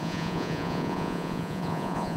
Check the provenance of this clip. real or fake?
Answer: fake